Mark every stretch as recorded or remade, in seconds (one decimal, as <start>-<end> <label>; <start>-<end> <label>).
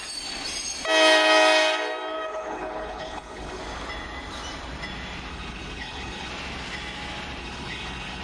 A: 0.0-2.3 recorded; 2.3-3.6 remade; 3.6-5.3 recorded; 5.3-6.3 remade; 6.3-7.4 recorded; 7.4-8.2 remade